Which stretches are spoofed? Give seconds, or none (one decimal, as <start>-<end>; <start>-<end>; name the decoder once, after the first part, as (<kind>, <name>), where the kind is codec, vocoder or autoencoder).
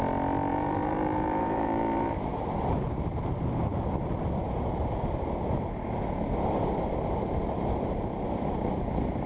0.5-3.0 (vocoder, BigVGAN v2)